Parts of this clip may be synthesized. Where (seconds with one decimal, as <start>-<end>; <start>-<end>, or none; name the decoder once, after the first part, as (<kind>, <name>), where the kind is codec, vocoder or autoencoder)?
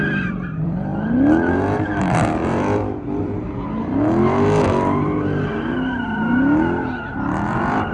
0.0-0.9 (vocoder, BigVGAN v2); 2.0-2.8; 7.5-7.9